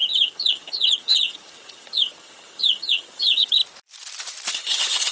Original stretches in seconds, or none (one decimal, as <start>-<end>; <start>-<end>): 3.6-4.5